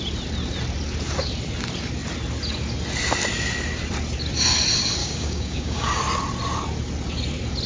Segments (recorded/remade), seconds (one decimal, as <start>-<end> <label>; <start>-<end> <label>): 0.0-5.0 recorded; 5.0-6.0 remade; 6.0-7.7 recorded